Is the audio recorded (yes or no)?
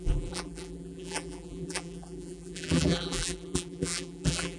no